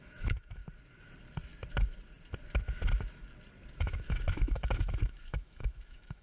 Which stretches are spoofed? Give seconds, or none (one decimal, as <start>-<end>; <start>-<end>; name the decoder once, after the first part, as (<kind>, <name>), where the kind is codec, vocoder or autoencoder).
0.0-0.6 (autoencoder, DAC-VAE); 3.8-6.2